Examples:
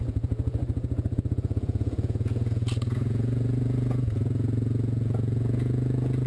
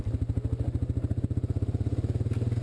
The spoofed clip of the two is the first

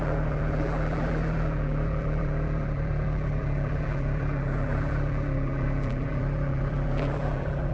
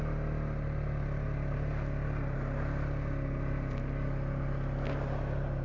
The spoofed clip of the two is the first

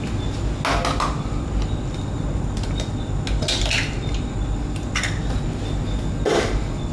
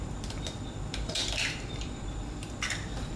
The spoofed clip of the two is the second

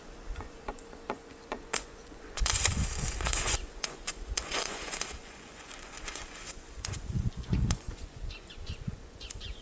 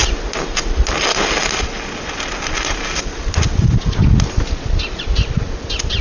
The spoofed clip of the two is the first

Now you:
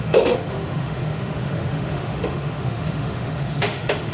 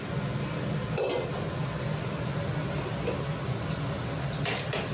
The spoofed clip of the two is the first